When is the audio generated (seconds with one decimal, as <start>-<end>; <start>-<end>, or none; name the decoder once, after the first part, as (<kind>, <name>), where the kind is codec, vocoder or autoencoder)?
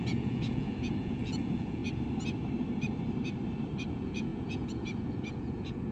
0.0-1.8 (vocoder, Vocos); 3.9-5.9